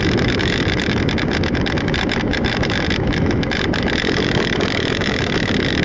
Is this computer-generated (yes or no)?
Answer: yes